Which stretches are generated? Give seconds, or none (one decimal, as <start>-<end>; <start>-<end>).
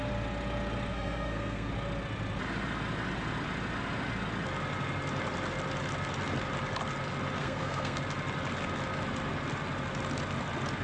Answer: 0.9-1.7; 7.4-8.0